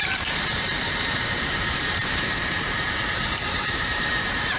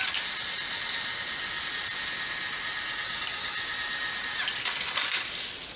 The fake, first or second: first